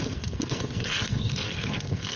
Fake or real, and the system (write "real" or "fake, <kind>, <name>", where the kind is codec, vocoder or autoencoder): fake, codec, SNAC